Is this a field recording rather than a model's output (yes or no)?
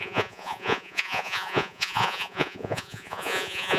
no